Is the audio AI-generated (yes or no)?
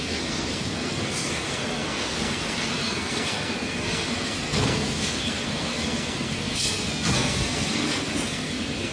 yes